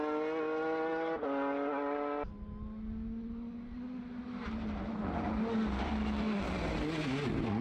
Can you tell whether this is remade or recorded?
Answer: recorded